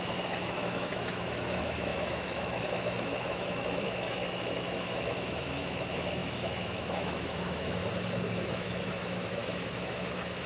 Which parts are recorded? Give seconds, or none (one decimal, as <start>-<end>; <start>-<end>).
7.8-8.4